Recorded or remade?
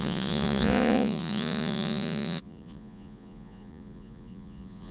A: remade